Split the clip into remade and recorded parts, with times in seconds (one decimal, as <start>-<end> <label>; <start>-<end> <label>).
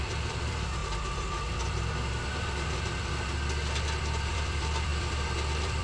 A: 0.0-0.8 remade; 0.8-4.3 recorded; 4.3-5.8 remade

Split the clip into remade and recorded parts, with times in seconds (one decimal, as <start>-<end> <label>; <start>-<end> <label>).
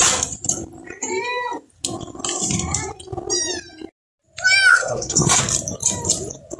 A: 0.0-4.7 recorded; 4.7-5.4 remade; 5.4-6.6 recorded